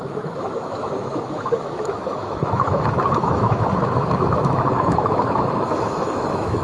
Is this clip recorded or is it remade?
remade